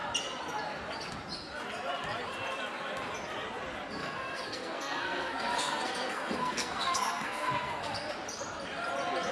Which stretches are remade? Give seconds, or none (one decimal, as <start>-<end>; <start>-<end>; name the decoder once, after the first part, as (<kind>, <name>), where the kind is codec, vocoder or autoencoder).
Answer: 4.0-8.1 (codec, SNAC)